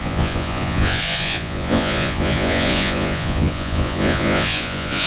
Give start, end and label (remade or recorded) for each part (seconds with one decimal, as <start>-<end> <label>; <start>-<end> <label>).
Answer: 0.0-5.1 remade